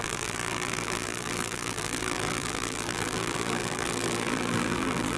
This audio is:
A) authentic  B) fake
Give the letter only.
B